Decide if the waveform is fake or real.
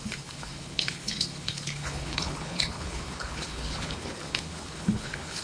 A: fake